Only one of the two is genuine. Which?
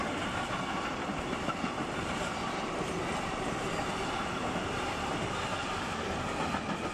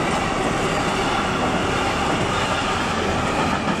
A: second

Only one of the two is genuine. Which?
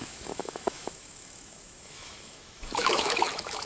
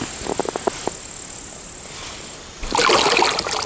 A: second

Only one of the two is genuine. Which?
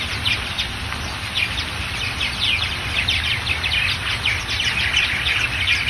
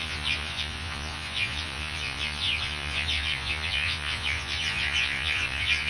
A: first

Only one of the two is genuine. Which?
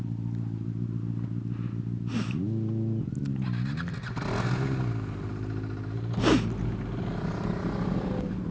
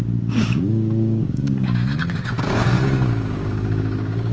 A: first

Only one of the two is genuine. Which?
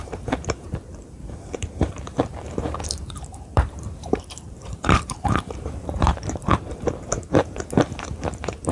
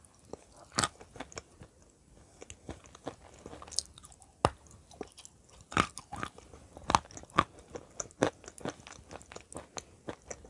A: second